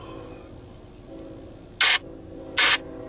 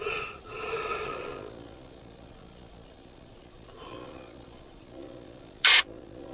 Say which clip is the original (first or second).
first